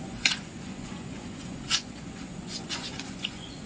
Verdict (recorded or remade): remade